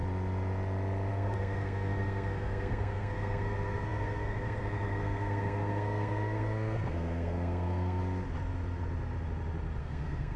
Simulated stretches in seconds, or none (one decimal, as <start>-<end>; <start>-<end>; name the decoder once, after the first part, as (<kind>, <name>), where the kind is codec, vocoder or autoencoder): 1.1-8.0 (codec, SNAC); 9.8-10.4